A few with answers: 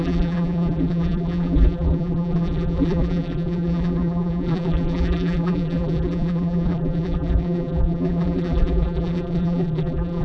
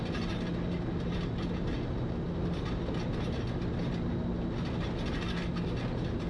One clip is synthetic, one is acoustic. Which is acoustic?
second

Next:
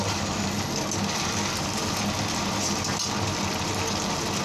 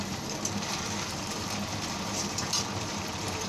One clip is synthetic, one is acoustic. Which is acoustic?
first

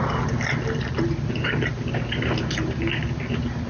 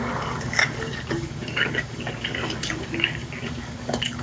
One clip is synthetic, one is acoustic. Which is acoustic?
first